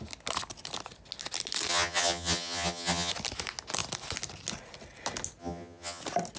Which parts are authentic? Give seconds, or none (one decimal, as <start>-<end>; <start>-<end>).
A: 0.0-1.7; 3.1-5.4; 6.0-6.4